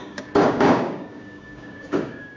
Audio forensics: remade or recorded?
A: remade